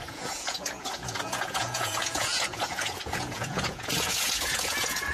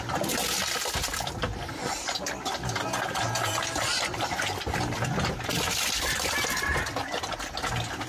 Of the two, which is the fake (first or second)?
first